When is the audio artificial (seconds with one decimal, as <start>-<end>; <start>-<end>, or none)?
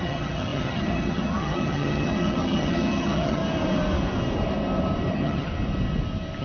0.0-3.4; 5.1-5.5